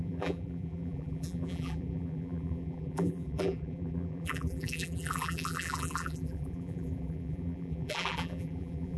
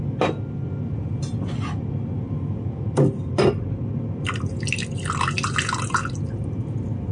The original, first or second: second